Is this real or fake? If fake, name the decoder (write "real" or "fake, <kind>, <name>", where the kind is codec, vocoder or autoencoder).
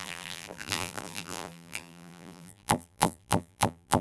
fake, vocoder, BigVGAN v2